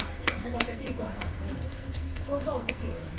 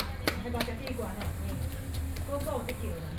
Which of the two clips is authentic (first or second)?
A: second